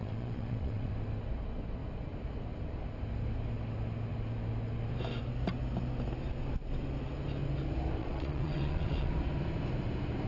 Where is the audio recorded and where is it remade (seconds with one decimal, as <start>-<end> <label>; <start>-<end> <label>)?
0.0-0.9 remade; 0.9-8.0 recorded; 8.0-9.1 remade; 9.1-10.3 recorded